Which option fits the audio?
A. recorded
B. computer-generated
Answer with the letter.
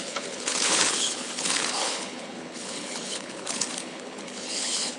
B